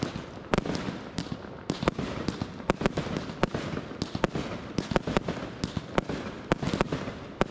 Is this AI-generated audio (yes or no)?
no